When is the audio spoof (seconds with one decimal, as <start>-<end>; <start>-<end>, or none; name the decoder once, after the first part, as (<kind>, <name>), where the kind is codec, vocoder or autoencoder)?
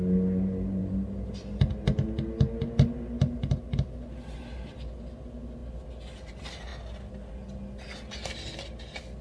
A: none